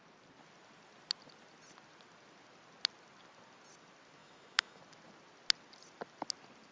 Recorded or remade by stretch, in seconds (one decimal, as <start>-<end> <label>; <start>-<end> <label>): 0.0-4.2 recorded; 4.2-4.8 remade; 4.8-6.7 recorded